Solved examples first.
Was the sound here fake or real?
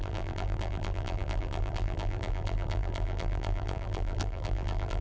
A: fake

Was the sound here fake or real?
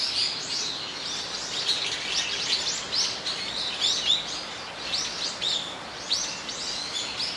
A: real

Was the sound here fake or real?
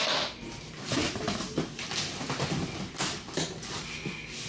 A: real